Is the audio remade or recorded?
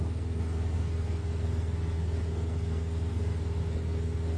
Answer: remade